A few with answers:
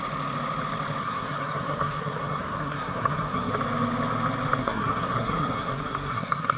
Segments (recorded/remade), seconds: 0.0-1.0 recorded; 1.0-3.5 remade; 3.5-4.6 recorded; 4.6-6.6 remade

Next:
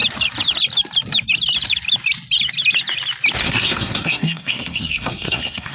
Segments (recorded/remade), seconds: 0.0-3.4 recorded; 3.4-5.7 remade

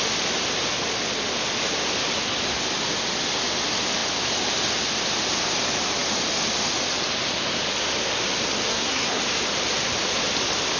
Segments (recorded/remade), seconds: 0.0-8.7 recorded; 8.7-9.2 remade; 9.2-10.8 recorded

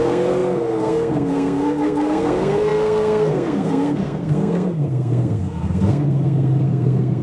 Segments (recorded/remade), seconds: 0.0-7.2 remade

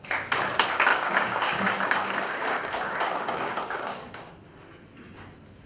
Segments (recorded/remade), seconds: 0.0-0.9 recorded; 0.9-4.3 remade; 4.3-5.7 recorded

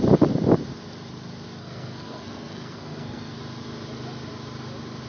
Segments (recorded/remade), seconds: 0.0-1.6 recorded; 1.6-3.4 remade; 3.4-5.1 recorded